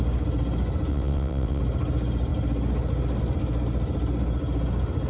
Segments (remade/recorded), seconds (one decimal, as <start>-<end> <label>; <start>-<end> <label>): 0.0-0.9 recorded; 0.9-1.6 remade; 1.6-5.1 recorded